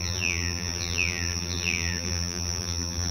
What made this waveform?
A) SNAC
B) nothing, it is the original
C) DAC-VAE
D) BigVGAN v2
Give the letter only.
D